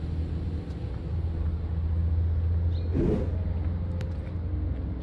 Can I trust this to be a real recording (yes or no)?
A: yes